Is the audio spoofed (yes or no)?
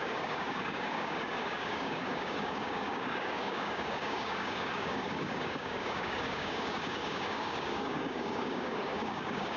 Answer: yes